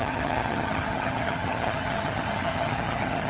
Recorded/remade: remade